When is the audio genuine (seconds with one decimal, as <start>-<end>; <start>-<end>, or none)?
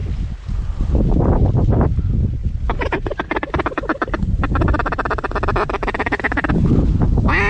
0.0-7.5